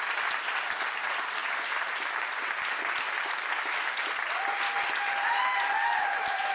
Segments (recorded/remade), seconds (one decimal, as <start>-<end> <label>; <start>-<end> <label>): 0.0-6.5 recorded